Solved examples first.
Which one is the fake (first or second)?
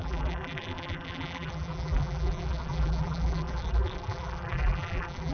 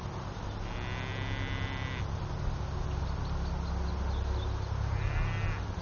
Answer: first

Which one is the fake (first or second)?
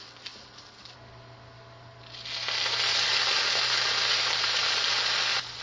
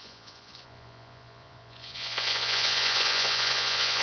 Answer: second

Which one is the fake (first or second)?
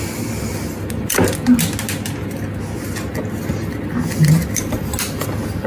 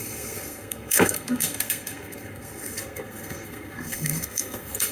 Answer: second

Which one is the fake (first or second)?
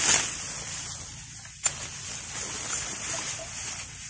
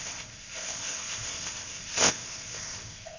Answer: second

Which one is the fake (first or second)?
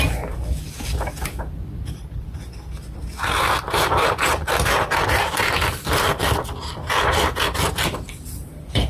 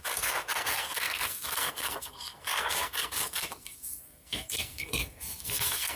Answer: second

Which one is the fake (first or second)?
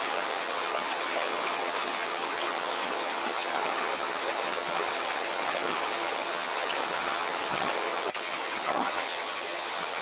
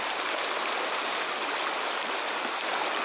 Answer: first